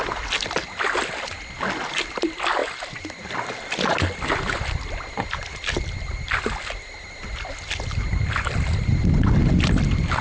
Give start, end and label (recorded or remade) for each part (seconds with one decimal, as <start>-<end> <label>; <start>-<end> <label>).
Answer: 0.0-10.2 recorded